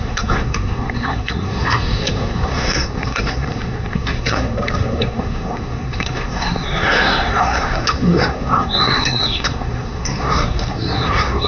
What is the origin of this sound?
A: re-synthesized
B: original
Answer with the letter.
A